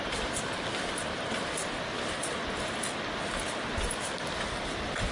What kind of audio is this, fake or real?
real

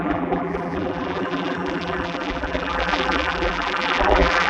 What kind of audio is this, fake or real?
fake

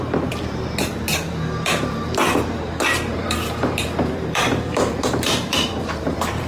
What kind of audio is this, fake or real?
fake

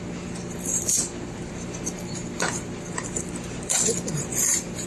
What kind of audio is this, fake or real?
fake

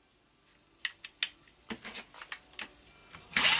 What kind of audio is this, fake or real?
real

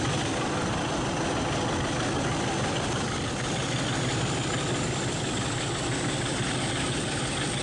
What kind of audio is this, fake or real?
real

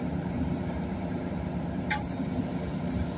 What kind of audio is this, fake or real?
fake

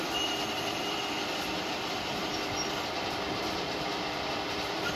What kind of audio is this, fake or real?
fake